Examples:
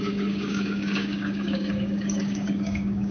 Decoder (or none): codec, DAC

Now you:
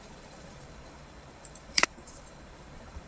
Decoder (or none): vocoder, BigVGAN v2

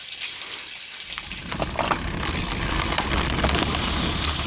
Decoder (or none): none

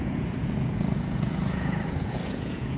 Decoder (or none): vocoder, Vocos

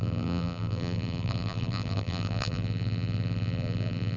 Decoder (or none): vocoder, BigVGAN v2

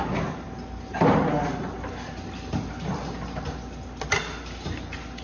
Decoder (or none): none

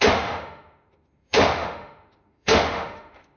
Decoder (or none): autoencoder, DAC-VAE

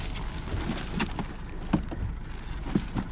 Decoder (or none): none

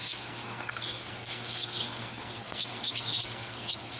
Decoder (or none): codec, SNAC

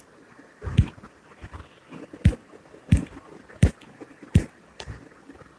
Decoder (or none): vocoder, BigVGAN v2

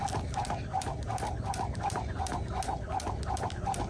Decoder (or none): none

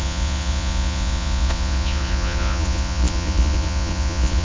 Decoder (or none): vocoder, Vocos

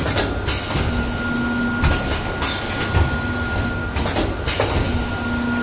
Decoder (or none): none